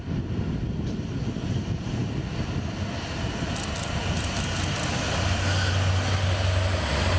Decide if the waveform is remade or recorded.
recorded